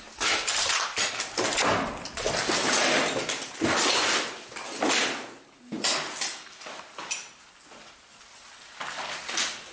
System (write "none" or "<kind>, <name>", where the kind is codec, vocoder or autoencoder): none